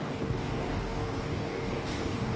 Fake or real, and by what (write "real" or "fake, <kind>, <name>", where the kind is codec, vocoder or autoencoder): fake, codec, DAC